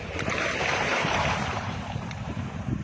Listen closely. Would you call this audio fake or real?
fake